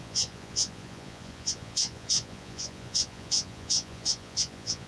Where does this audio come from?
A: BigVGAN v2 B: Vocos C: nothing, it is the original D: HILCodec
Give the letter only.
B